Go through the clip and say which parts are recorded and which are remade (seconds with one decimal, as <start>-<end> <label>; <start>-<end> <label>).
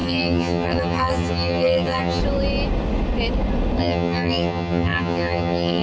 0.0-2.2 remade; 2.2-3.8 recorded; 3.8-5.8 remade